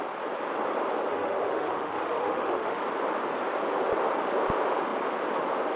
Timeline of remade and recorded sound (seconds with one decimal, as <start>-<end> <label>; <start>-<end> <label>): 0.0-1.1 recorded; 1.1-2.8 remade; 2.8-5.8 recorded